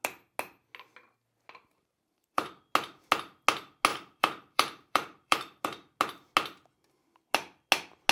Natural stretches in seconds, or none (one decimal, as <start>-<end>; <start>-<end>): 0.0-1.7; 2.5-3.9; 5.6-8.1